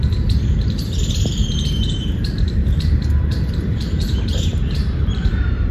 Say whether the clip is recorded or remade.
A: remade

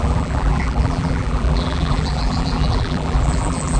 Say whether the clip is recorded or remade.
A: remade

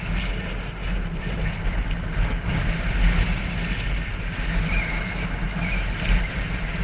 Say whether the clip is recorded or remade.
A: recorded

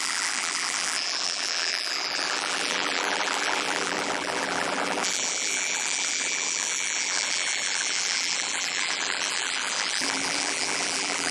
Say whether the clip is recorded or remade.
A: remade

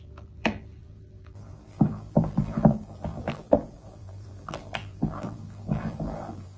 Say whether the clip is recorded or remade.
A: remade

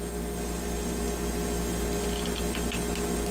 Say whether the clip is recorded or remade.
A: recorded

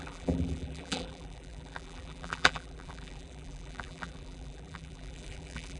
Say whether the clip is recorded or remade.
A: remade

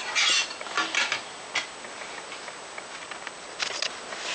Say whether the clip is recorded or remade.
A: recorded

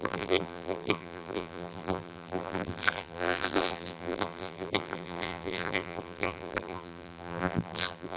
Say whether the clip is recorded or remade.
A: remade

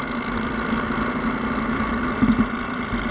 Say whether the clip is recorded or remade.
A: recorded